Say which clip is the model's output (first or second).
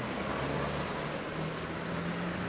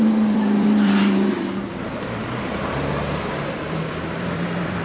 second